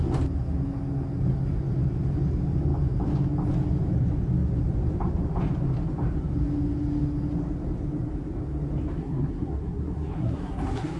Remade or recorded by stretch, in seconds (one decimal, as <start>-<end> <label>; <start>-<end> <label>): 0.0-9.0 recorded; 9.0-11.0 remade